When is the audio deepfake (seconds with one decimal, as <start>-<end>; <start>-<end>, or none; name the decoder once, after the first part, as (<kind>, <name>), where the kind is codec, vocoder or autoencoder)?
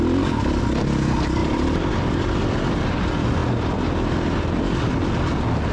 1.4-2.9 (vocoder, BigVGAN v2)